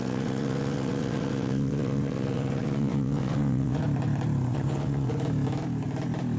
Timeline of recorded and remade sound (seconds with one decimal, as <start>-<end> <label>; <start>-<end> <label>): 0.0-3.8 remade; 3.8-4.5 recorded; 4.5-5.1 remade; 5.1-6.4 recorded